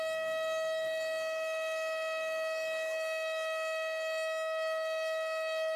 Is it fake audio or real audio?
fake